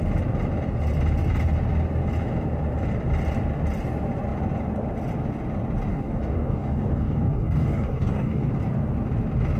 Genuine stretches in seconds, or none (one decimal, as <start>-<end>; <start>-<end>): 0.0-5.9; 8.5-9.6